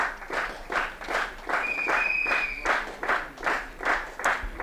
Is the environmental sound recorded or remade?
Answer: recorded